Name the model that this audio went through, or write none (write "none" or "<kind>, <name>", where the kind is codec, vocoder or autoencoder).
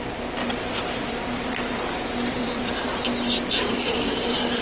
vocoder, BigVGAN v2